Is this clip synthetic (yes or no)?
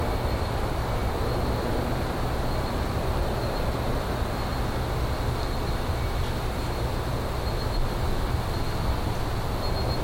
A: no